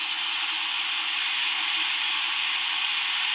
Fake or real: real